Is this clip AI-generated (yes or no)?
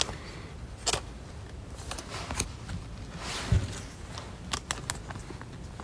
no